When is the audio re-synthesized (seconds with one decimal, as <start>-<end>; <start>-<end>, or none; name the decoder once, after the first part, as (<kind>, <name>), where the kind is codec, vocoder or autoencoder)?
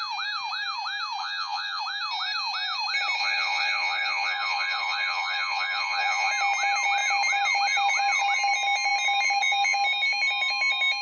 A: 1.2-1.8 (vocoder, Vocos); 3.2-6.3